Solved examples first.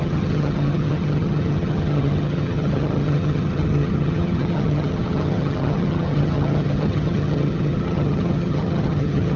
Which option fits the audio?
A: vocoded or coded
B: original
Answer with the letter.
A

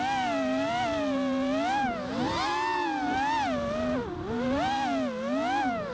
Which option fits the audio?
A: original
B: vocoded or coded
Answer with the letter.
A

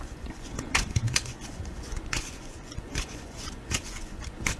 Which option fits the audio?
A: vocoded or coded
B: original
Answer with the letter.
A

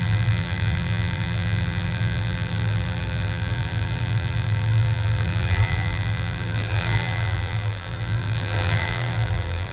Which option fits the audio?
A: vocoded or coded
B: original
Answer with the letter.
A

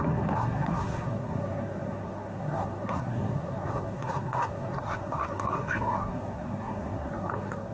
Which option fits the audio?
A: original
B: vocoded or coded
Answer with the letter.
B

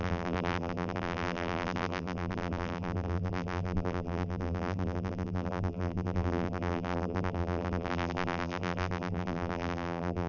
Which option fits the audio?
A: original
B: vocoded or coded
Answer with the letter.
B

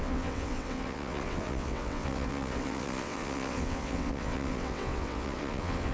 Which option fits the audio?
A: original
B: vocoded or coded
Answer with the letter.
B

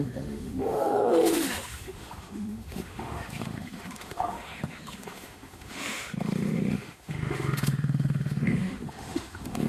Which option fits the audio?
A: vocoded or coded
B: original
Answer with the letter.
A